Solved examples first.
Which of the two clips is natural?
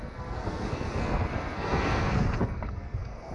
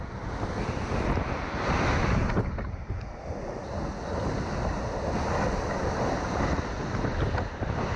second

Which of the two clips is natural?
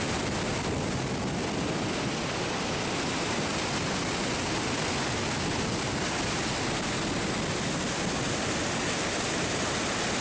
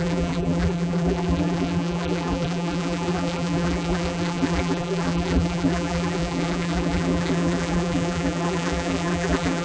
first